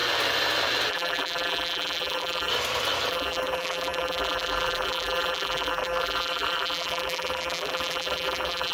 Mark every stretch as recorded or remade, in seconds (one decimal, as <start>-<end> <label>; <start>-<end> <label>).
0.0-0.9 recorded; 0.9-2.5 remade; 2.5-3.1 recorded; 3.1-8.7 remade